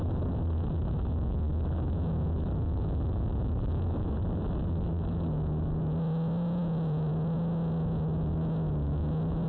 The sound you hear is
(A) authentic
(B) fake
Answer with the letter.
B